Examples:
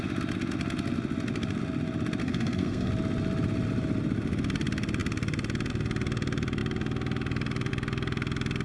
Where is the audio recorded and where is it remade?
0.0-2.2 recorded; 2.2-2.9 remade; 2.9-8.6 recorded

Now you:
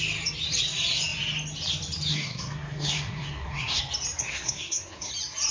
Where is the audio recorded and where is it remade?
0.0-2.1 recorded; 2.1-3.8 remade; 3.8-4.2 recorded; 4.2-5.1 remade; 5.1-5.5 recorded

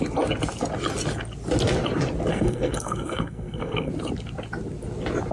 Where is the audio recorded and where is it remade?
0.0-2.3 recorded; 2.3-3.9 remade; 3.9-5.3 recorded

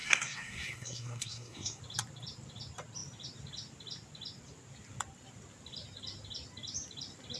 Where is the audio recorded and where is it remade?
0.0-1.8 remade; 1.8-7.4 recorded

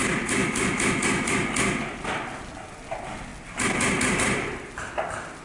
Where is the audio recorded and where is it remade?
0.0-5.4 recorded

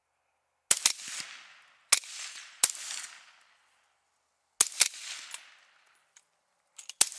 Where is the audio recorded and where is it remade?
0.0-7.2 recorded

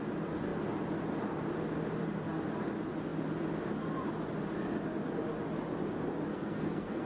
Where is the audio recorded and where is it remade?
0.0-6.3 recorded; 6.3-7.1 remade